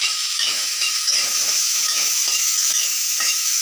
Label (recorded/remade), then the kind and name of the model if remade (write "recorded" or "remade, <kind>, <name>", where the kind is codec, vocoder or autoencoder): remade, autoencoder, DAC-VAE